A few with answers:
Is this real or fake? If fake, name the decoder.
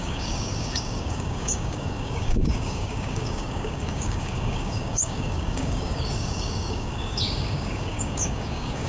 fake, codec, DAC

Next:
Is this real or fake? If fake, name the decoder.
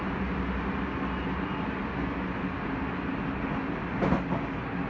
real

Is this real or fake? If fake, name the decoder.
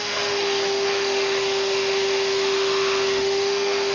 fake, autoencoder, DAC-VAE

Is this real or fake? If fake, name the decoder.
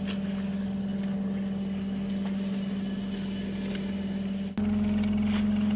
real